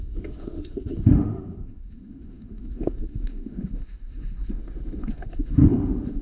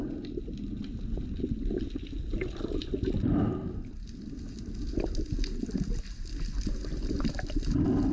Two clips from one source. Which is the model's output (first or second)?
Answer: first